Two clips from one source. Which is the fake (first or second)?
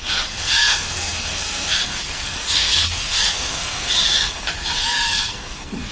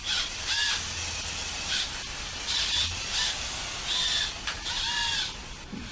first